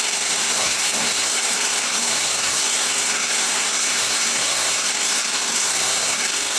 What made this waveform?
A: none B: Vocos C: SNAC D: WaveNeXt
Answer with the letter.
C